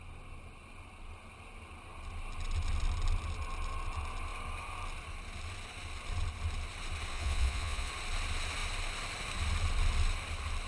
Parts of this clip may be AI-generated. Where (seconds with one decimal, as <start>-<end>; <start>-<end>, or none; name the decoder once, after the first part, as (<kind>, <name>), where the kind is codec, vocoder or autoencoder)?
7.1-7.9 (vocoder, Vocos)